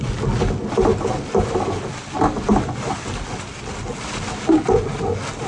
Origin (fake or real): real